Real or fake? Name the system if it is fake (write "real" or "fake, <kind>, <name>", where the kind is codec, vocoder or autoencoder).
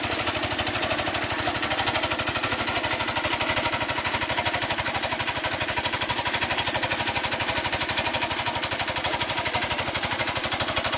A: real